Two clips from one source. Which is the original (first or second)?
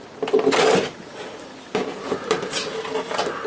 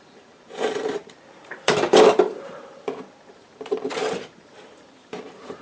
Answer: first